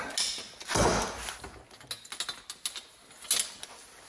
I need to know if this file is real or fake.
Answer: real